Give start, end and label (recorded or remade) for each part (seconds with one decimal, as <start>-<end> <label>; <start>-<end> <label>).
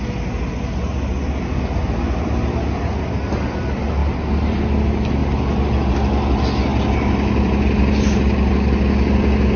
0.0-4.0 recorded; 4.0-4.6 remade; 4.6-9.6 recorded